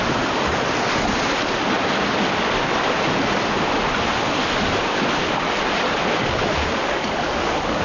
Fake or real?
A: real